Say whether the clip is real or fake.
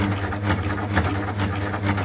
real